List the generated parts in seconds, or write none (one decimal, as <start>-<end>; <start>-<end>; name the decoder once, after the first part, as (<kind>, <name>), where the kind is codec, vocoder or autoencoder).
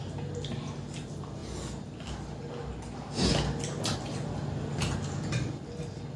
none